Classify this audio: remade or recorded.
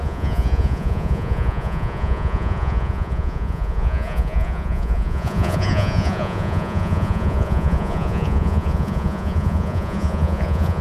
remade